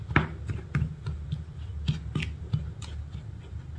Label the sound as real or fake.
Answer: real